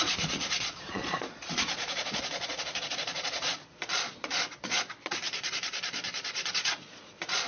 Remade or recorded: remade